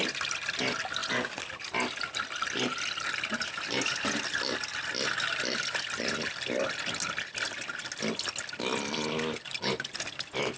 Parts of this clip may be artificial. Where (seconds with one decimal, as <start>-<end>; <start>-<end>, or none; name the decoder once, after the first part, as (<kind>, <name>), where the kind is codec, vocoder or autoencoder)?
none